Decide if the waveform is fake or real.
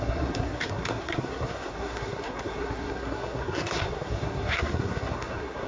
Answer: fake